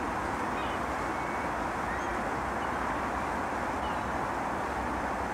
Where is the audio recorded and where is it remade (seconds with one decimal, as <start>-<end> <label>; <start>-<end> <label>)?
0.0-5.3 recorded